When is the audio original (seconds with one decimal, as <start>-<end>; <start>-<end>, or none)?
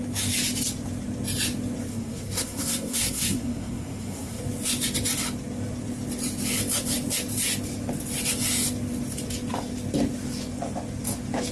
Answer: 0.0-1.9; 4.4-11.5